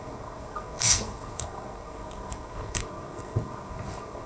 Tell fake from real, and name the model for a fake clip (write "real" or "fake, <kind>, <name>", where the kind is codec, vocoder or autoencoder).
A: fake, codec, SNAC